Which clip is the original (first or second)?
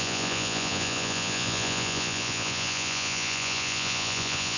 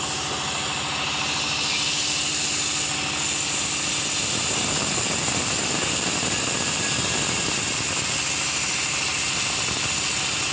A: second